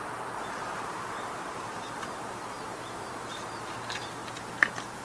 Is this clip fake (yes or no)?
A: yes